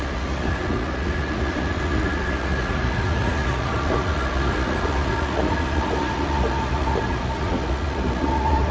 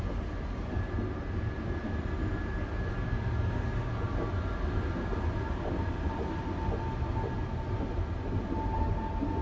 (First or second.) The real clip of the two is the second